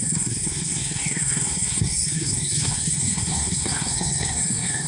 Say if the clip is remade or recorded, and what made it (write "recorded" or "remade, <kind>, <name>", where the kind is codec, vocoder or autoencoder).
remade, codec, SNAC